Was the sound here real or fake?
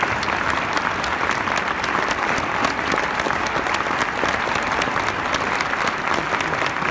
real